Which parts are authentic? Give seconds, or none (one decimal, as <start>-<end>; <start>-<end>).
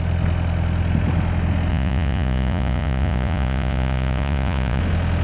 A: 0.0-1.7; 4.8-5.2